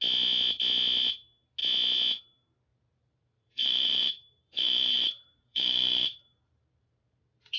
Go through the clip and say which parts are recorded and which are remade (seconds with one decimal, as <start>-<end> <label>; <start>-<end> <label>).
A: 0.0-2.7 recorded; 2.7-7.6 remade